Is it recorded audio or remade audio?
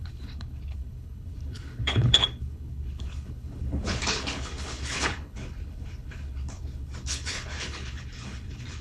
remade